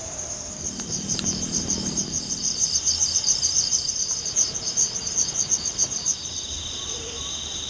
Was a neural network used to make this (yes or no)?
yes